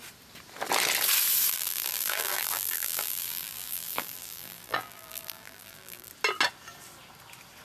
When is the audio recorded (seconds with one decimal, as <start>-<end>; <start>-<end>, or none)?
0.0-1.5; 6.1-7.6